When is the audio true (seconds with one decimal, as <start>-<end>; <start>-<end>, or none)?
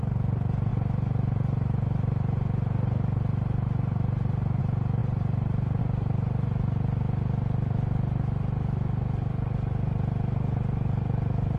0.0-0.7; 4.6-5.0; 5.8-11.6